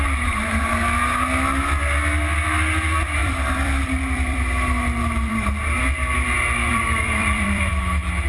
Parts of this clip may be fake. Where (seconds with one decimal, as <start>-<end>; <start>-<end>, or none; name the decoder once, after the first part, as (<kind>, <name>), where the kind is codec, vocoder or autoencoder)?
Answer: 3.2-5.3 (vocoder, BigVGAN v2); 6.7-7.8